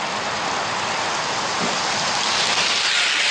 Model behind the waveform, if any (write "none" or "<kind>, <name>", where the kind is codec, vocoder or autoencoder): none